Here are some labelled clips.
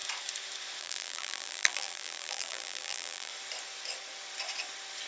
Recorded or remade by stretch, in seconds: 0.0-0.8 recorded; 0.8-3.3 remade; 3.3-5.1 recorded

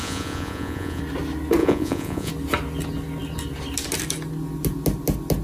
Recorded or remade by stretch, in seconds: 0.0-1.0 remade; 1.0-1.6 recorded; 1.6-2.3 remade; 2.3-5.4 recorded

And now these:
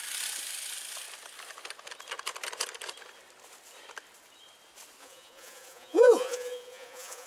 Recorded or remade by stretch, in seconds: 0.0-5.0 recorded; 5.0-7.3 remade